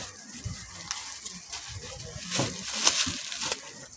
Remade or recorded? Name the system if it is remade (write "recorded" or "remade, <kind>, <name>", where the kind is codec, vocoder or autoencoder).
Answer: recorded